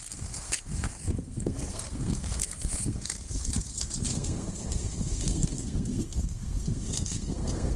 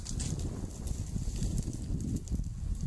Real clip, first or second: second